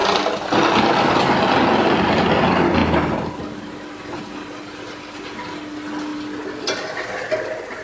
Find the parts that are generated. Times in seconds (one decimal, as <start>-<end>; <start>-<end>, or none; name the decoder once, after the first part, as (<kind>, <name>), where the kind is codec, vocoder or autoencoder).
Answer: none